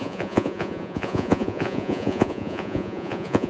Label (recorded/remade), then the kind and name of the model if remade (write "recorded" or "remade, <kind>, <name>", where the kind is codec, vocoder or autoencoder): remade, vocoder, Vocos